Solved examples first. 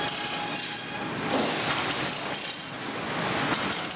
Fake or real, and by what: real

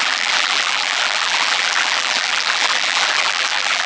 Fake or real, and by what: fake, vocoder, BigVGAN v2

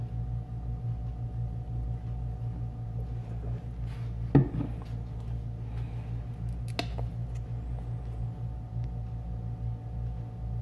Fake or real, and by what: real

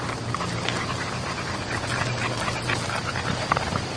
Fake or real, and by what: real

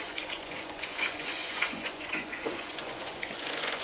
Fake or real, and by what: fake, vocoder, Vocos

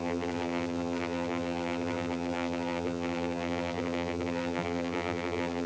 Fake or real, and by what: fake, vocoder, BigVGAN v2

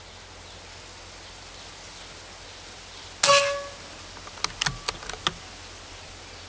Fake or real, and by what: real